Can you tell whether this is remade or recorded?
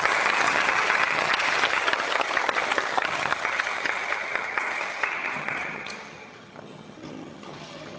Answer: remade